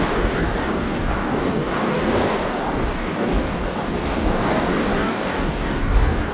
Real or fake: fake